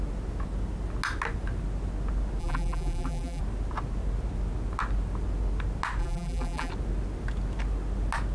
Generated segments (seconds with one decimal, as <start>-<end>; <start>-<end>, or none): 2.4-3.4; 6.0-6.7